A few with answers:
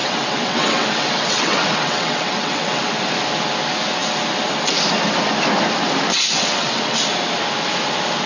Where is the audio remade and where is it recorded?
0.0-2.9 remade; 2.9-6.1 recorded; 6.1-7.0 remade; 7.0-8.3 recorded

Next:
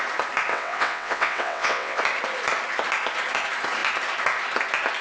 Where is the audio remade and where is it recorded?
0.0-0.5 recorded; 0.5-2.0 remade; 2.0-5.0 recorded

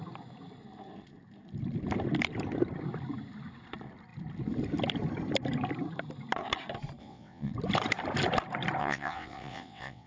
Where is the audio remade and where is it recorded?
0.0-7.0 recorded; 7.0-7.5 remade; 7.5-8.8 recorded; 8.8-10.1 remade

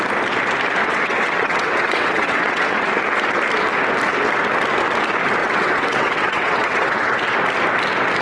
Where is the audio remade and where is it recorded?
0.0-0.8 recorded; 0.8-2.9 remade; 2.9-5.4 recorded; 5.4-7.2 remade; 7.2-8.2 recorded

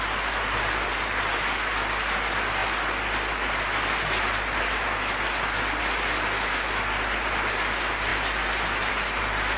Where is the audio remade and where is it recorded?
0.0-9.6 recorded